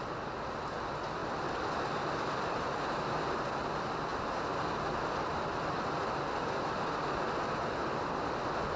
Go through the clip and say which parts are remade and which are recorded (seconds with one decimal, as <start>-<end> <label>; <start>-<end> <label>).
0.0-8.8 recorded